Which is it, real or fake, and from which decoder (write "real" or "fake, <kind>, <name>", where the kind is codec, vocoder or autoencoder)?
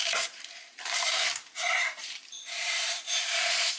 fake, vocoder, BigVGAN v2